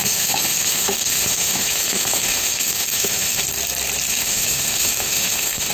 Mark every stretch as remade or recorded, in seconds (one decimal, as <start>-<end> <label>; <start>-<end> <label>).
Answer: 0.0-3.4 remade; 3.4-4.1 recorded; 4.1-5.7 remade

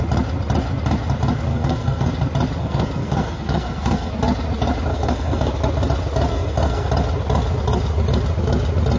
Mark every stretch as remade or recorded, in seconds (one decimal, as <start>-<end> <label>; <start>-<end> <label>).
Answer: 0.0-1.5 recorded; 1.5-2.1 remade; 2.1-2.6 recorded; 2.6-4.1 remade; 4.1-4.9 recorded; 4.9-5.5 remade; 5.5-6.3 recorded; 6.3-6.9 remade; 6.9-9.0 recorded

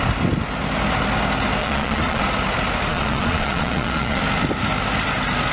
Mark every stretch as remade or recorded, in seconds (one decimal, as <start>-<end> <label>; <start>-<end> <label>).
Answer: 0.0-1.6 recorded; 1.6-2.2 remade; 2.2-2.9 recorded; 2.9-4.2 remade; 4.2-5.5 recorded